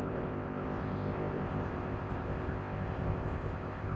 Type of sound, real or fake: fake